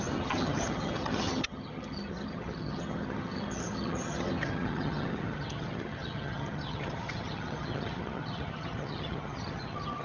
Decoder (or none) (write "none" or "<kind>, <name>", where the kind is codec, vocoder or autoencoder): vocoder, HiFi-GAN